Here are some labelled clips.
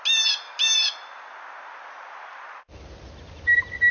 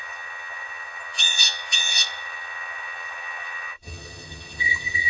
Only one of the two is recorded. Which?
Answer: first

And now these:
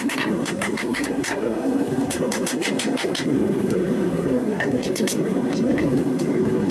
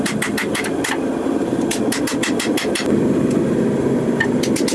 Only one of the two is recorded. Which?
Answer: second